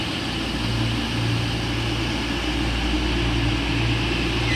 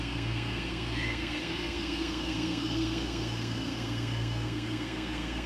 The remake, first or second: second